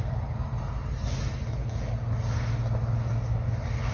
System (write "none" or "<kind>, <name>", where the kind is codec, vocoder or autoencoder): none